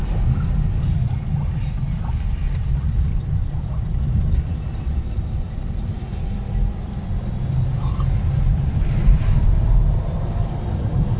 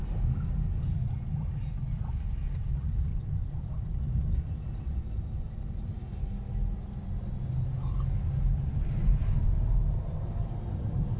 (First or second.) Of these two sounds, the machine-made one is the first